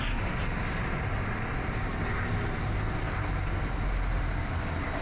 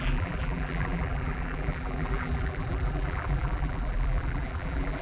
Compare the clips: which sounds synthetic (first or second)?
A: second